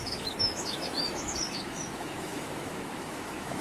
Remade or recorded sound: remade